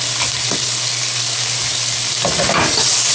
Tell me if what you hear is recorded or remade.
recorded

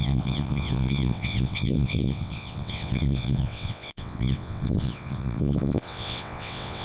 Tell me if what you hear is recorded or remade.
remade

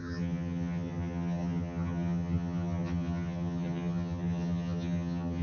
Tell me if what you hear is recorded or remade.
remade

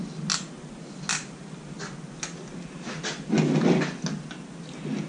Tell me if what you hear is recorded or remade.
recorded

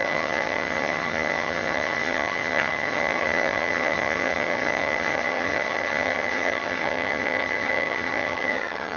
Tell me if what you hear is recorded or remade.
remade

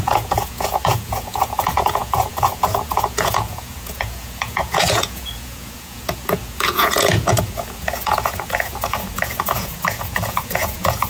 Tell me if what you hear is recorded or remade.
remade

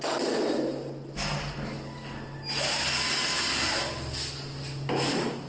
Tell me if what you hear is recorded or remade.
recorded